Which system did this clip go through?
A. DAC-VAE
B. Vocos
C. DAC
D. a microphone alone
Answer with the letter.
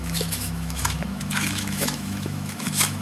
A